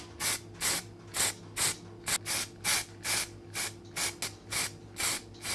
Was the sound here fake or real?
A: real